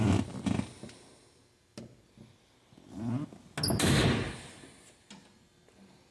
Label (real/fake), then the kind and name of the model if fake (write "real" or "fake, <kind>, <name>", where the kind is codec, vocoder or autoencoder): real